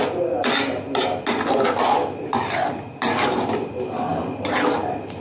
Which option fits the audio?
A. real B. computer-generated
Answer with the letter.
A